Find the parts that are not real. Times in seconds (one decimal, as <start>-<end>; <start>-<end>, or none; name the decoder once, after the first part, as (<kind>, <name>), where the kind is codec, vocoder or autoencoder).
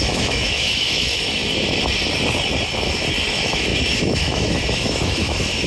0.0-1.4 (autoencoder, DAC-VAE); 3.3-5.7